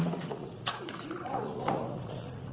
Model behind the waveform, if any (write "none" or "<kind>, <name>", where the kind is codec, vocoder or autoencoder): vocoder, Vocos